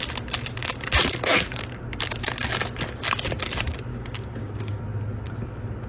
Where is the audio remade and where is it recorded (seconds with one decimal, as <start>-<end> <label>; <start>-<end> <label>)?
0.0-3.9 recorded; 3.9-4.8 remade; 4.8-5.9 recorded